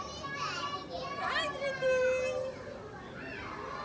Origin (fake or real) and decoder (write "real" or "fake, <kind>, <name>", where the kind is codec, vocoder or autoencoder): real